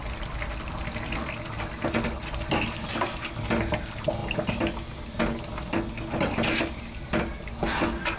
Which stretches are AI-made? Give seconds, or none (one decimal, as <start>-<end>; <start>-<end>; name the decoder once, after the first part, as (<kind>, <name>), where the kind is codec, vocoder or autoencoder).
none